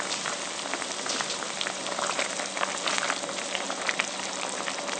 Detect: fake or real real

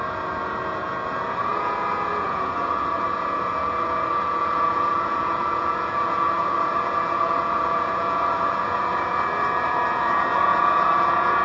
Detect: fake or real fake